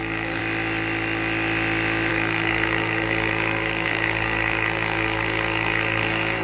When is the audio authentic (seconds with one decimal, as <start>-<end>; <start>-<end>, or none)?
0.4-2.1